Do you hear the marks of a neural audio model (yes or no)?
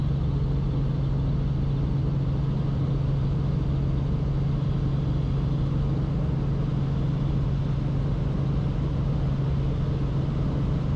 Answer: no